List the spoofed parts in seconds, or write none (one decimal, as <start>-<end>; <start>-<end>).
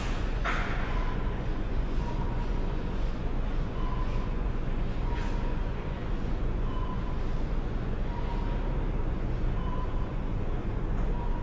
0.0-8.3; 9.0-11.4